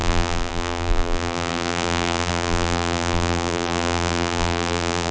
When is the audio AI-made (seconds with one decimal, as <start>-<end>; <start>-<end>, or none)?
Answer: 0.0-5.1